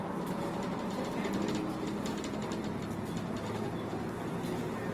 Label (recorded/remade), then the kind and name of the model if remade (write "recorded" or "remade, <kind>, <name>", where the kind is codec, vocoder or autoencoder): recorded